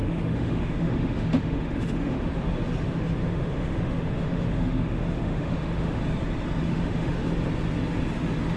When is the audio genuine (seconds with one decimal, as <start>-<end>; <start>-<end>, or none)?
2.2-3.2; 6.0-6.7; 7.3-8.6